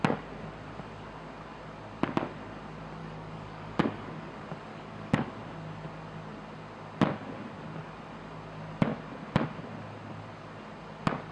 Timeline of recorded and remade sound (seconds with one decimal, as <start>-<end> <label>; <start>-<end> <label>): 0.0-3.0 recorded; 3.0-4.3 remade; 4.3-4.7 recorded; 4.7-5.3 remade; 5.3-11.3 recorded